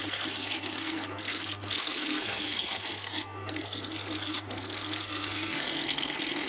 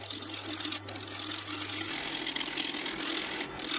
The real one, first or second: second